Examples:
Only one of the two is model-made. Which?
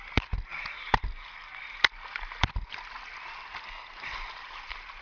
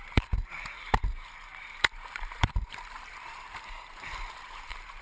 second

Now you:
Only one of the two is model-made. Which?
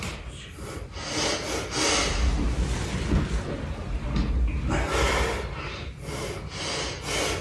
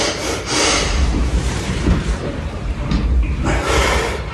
second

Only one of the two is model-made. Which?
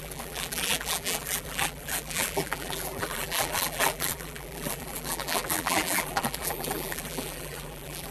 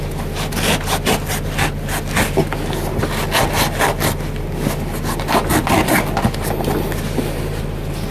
first